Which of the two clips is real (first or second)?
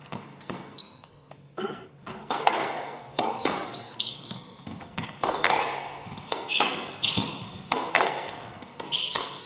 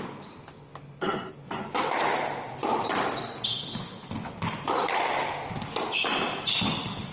second